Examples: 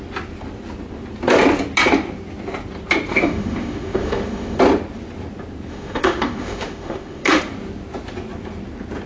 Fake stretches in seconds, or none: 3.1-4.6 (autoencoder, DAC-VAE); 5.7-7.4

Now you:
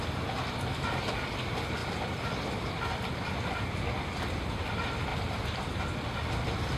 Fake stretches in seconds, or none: 5.1-5.8 (vocoder, BigVGAN v2)

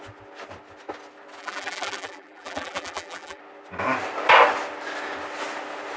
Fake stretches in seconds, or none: 1.4-3.4 (vocoder, BigVGAN v2)

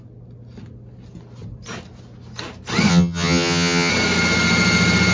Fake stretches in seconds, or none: 2.9-3.9 (vocoder, HiFi-GAN)